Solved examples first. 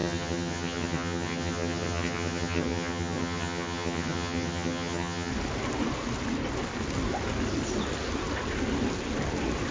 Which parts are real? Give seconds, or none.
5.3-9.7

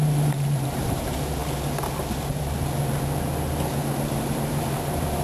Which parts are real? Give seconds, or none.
1.4-3.8

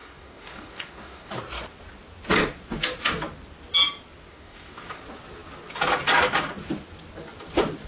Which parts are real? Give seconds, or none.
1.3-4.3; 5.0-7.9

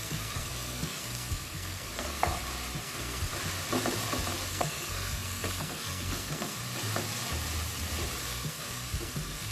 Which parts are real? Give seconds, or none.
2.3-2.8; 3.3-4.5; 6.6-8.2